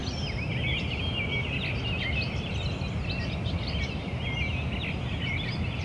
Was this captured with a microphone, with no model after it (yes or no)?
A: yes